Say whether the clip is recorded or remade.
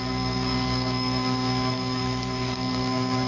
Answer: remade